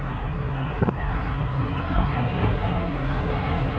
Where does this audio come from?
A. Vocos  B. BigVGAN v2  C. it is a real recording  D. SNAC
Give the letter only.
D